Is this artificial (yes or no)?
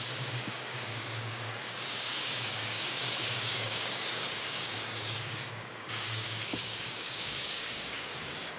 yes